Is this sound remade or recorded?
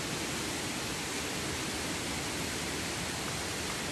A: recorded